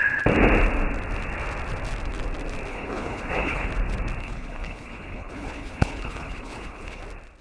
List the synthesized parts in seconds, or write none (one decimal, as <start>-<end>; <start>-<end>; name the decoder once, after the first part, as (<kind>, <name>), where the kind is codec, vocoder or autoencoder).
2.7-3.7 (codec, HILCodec); 4.2-7.0